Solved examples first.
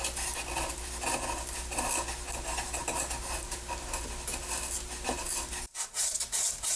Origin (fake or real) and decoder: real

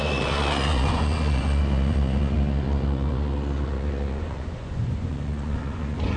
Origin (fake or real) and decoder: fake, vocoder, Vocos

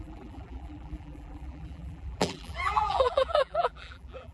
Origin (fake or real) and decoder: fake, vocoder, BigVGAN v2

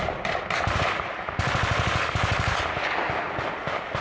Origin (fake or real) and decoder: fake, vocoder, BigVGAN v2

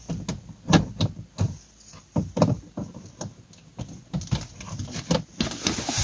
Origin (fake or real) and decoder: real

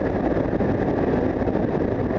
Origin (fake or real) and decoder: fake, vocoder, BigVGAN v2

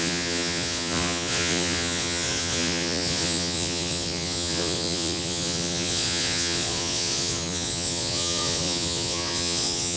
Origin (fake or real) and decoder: fake, vocoder, Vocos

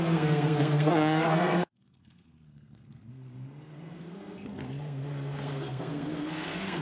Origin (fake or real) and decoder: fake, codec, SNAC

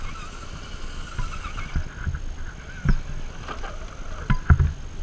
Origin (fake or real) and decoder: real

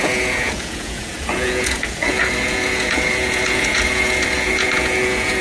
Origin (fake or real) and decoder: fake, vocoder, Vocos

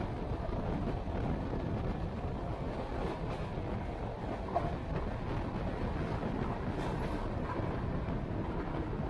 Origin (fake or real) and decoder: real